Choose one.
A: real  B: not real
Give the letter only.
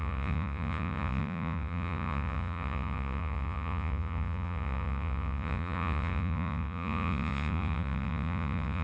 B